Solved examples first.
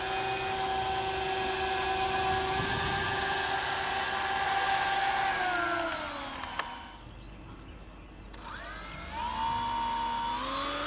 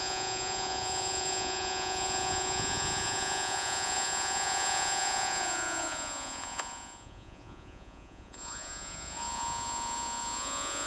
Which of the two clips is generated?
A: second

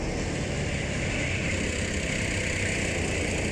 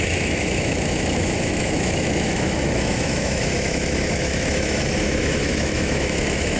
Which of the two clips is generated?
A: second